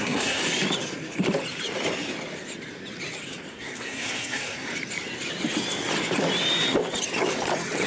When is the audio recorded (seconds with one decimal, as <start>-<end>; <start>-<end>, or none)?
0.4-3.5; 4.7-7.9